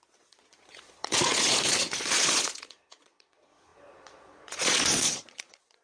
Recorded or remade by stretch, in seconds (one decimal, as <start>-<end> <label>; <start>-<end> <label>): 0.0-5.8 remade